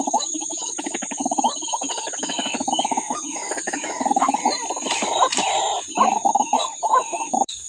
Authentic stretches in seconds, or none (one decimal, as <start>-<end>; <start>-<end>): 4.4-6.1